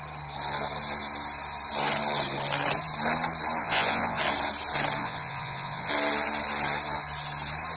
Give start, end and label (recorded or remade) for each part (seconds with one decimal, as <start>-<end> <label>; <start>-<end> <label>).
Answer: 0.0-3.6 recorded; 3.6-4.2 remade; 4.2-5.0 recorded; 5.0-5.9 remade; 5.9-7.8 recorded